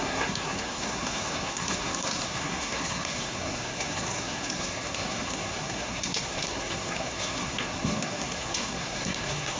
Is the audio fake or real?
fake